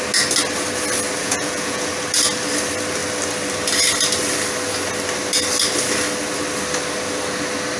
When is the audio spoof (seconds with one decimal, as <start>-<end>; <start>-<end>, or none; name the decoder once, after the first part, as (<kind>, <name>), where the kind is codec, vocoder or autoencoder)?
1.2-1.9 (vocoder, Vocos)